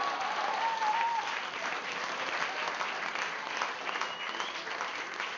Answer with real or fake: real